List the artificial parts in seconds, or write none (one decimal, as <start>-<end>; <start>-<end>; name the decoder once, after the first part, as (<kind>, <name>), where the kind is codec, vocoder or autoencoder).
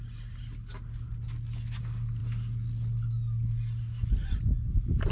none